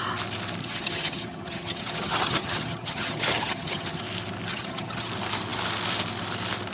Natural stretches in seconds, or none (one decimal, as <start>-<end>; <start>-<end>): 0.0-0.6; 4.0-4.5; 5.1-6.7